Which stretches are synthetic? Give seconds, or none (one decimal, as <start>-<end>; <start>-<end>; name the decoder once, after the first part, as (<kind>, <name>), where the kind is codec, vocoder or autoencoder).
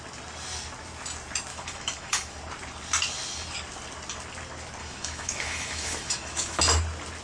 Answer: 1.5-2.4 (autoencoder, DAC-VAE); 4.8-6.6